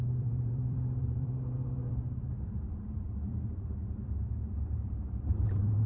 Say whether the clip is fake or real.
fake